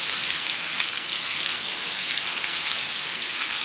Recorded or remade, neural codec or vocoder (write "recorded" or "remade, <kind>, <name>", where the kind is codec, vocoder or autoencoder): remade, codec, SNAC